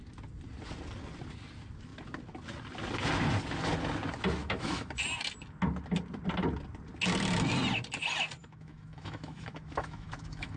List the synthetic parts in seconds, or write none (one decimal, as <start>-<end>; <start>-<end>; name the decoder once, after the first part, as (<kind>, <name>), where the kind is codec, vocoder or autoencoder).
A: 4.4-4.9 (autoencoder, DAC-VAE); 8.4-10.6